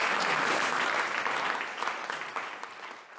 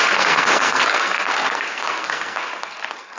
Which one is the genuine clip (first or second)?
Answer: first